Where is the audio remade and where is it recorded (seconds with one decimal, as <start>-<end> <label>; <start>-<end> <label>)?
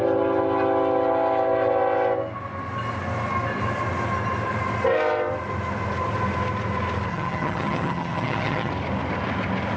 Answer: 0.0-7.1 recorded; 7.1-8.7 remade; 8.7-9.8 recorded